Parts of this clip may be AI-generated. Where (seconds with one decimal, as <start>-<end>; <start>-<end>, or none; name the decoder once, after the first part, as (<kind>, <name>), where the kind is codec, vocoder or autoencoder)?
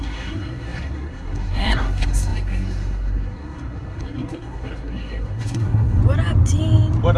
0.0-6.0 (codec, SNAC)